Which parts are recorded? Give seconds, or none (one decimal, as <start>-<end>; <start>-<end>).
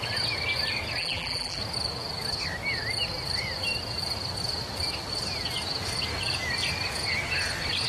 0.0-1.0; 1.6-7.9